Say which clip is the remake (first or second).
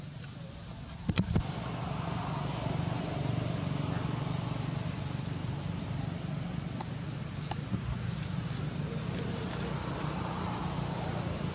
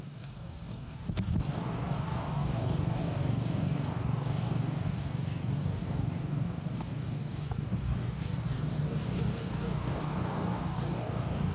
second